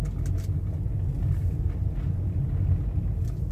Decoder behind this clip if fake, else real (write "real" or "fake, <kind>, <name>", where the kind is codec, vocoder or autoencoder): real